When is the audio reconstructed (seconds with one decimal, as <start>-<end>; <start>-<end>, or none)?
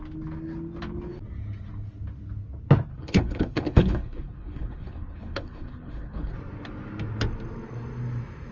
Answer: 2.9-6.3